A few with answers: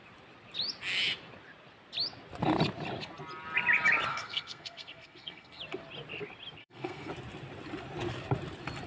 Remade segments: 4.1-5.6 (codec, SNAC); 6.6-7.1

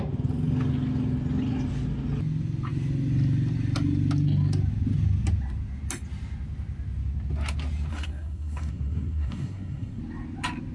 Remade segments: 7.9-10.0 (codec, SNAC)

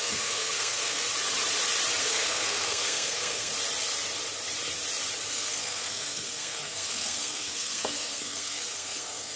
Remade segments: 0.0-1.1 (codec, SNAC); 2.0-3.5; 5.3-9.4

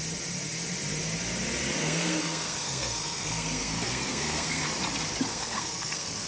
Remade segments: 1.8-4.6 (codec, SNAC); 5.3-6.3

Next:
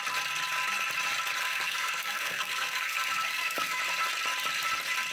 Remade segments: 1.4-3.8 (codec, SNAC)

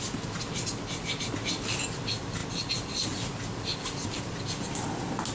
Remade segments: none